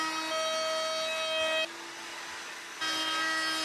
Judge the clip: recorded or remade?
recorded